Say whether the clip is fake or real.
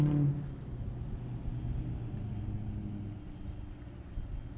real